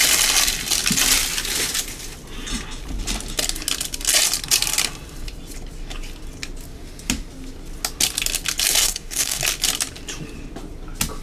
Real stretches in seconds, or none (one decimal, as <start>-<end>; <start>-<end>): 0.0-8.8; 9.4-11.2